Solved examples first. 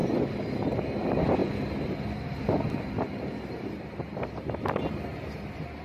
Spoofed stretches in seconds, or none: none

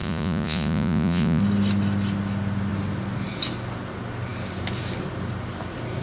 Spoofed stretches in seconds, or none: 0.0-1.4 (vocoder, Vocos)

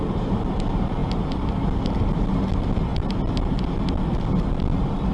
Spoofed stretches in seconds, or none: none

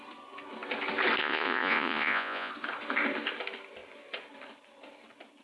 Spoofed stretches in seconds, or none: 1.2-2.5 (vocoder, Vocos)

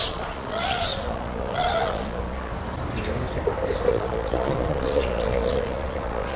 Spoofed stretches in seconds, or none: 0.0-2.5 (vocoder, Vocos); 3.9-6.4

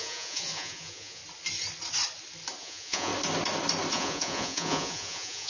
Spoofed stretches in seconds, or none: 0.0-1.2 (vocoder, Vocos); 2.6-3.1; 3.9-5.5

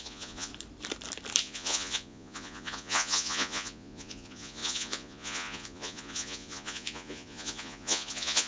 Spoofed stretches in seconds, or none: 0.0-0.5 (vocoder, Vocos); 1.4-8.5